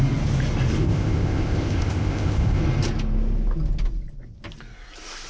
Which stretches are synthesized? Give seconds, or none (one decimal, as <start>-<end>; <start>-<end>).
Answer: 0.8-2.6